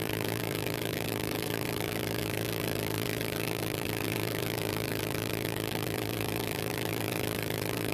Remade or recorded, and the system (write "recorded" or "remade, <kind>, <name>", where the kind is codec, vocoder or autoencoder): remade, vocoder, BigVGAN v2